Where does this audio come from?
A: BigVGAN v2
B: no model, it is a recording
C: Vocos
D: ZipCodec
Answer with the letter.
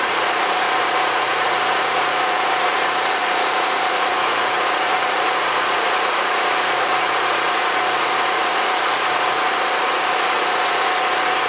C